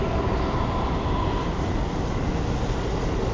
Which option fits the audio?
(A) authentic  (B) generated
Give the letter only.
A